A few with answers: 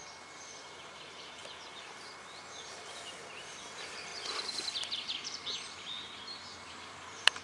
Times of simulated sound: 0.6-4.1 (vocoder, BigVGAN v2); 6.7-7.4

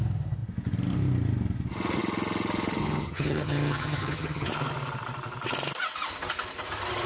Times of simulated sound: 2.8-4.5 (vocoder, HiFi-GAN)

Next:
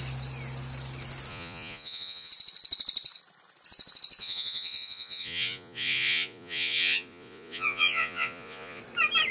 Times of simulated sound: 1.3-2.3 (vocoder, Vocos); 4.2-8.8

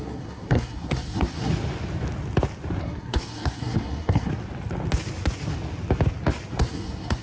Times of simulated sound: 0.0-1.5 (codec, SNAC); 2.8-4.3; 6.6-7.2